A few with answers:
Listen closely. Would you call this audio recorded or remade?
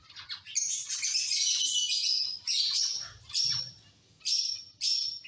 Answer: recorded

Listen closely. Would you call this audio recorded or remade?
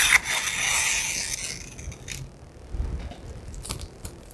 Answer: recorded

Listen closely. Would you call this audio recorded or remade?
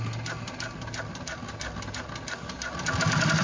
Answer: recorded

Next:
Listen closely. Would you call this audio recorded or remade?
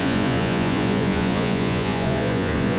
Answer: remade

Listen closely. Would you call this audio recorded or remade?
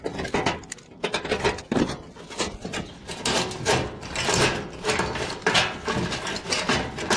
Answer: recorded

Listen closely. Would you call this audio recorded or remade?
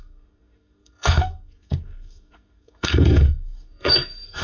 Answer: remade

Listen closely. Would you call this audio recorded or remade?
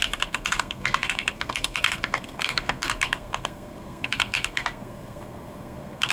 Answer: remade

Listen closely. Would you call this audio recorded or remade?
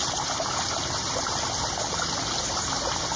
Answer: recorded